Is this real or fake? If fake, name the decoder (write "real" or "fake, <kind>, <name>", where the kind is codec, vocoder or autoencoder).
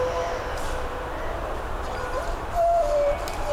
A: fake, vocoder, BigVGAN v2